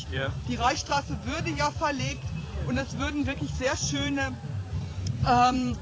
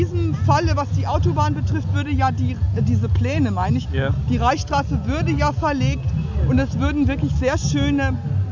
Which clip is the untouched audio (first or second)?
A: second